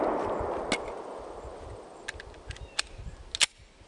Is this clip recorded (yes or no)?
yes